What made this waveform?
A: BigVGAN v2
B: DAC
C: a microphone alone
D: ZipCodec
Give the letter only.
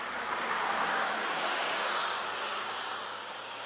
B